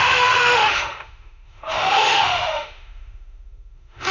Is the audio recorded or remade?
remade